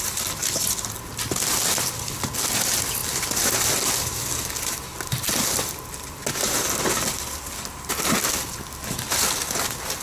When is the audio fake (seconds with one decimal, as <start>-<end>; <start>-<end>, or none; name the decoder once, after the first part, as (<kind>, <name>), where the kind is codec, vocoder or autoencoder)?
none